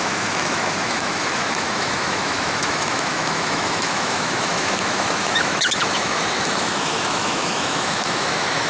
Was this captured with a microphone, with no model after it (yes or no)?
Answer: no